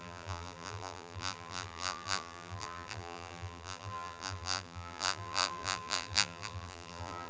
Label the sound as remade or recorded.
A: remade